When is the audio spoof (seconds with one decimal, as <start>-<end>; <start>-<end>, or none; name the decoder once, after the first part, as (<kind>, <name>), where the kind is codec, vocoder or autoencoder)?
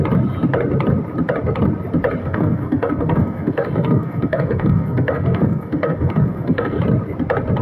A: 2.2-6.8 (codec, SNAC)